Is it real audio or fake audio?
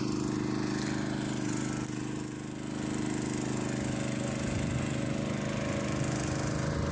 real